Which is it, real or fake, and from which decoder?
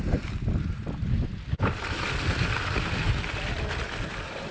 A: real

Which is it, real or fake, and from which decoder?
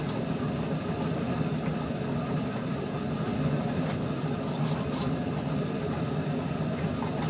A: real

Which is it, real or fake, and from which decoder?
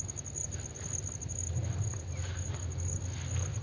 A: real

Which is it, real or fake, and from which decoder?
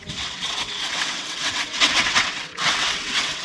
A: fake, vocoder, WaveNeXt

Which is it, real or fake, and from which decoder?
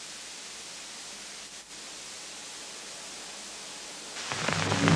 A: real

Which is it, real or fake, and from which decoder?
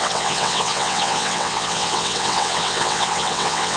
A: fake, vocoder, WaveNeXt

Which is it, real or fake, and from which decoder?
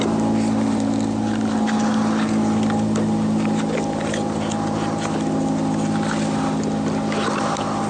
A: real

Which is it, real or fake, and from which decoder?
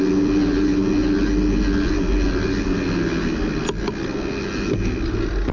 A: real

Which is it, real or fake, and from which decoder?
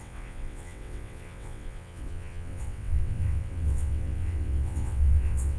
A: fake, vocoder, WaveNeXt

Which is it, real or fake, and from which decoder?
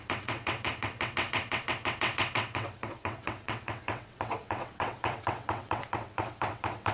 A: fake, vocoder, WaveNeXt